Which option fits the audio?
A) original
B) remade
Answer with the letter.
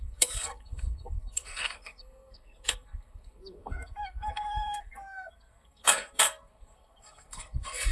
B